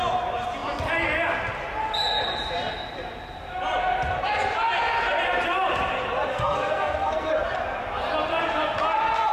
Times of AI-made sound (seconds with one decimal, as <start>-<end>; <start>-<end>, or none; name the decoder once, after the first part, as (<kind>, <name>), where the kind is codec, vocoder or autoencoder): 6.3-7.3 (codec, SNAC)